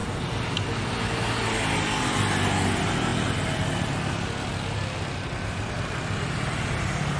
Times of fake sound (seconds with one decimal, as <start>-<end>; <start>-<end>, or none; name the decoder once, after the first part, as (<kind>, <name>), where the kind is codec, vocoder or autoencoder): none